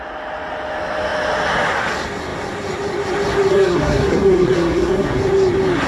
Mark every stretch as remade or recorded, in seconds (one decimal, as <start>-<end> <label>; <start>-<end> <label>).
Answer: 0.0-3.5 recorded; 3.5-5.2 remade; 5.2-5.9 recorded